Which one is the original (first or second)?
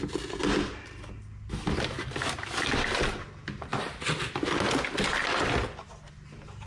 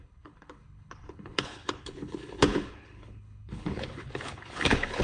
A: first